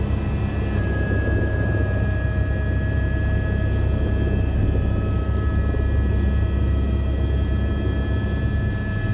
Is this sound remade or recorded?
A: recorded